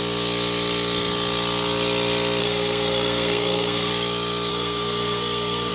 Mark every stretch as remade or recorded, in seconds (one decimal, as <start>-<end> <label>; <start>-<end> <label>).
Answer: 0.0-2.4 recorded; 2.4-3.9 remade; 3.9-4.5 recorded; 4.5-5.7 remade